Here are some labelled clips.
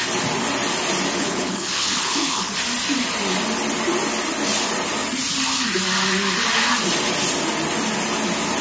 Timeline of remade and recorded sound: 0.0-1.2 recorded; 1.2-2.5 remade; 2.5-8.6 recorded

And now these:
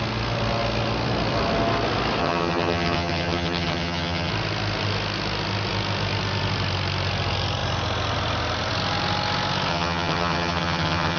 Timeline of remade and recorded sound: 0.0-2.2 recorded; 2.2-4.3 remade; 4.3-9.7 recorded; 9.7-11.2 remade

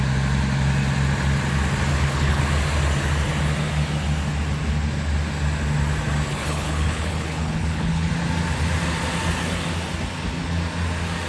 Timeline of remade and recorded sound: 0.0-1.9 recorded; 1.9-2.4 remade; 2.4-6.3 recorded; 6.3-8.1 remade; 8.1-11.3 recorded

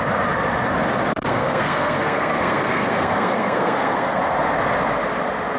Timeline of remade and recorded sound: 0.0-1.1 recorded; 1.1-4.2 remade; 4.2-5.6 recorded

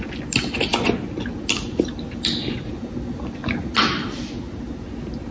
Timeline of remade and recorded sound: 0.0-5.3 recorded